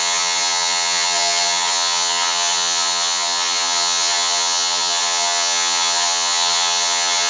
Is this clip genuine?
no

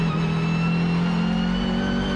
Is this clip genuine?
yes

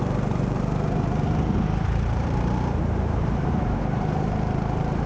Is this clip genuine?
no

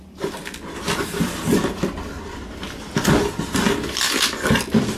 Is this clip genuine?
no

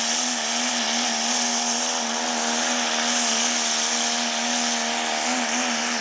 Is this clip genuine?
yes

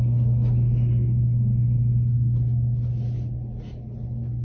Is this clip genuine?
yes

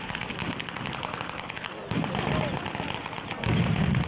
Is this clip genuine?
yes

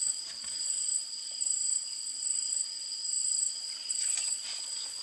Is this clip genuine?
no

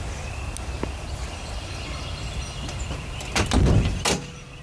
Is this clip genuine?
yes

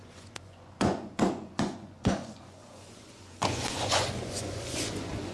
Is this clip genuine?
no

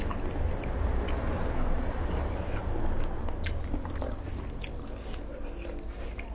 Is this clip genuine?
yes